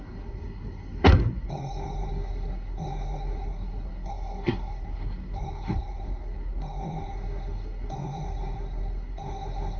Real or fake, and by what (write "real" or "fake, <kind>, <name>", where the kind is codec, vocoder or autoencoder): fake, codec, SNAC